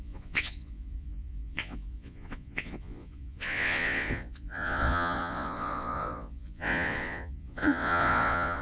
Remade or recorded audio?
remade